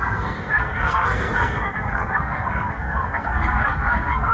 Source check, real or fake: fake